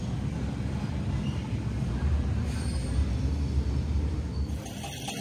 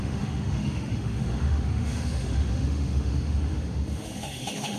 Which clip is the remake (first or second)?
second